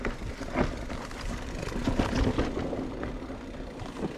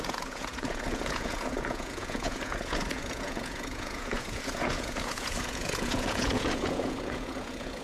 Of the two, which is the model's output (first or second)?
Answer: second